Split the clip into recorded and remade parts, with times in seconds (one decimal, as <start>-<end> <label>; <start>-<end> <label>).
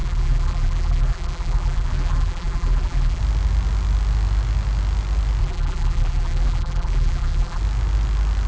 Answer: 0.0-3.2 remade; 3.2-5.4 recorded; 5.4-7.6 remade; 7.6-8.5 recorded